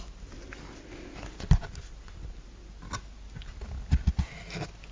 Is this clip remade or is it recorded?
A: recorded